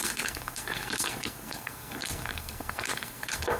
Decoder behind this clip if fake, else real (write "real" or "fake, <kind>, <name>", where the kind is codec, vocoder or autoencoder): fake, codec, SNAC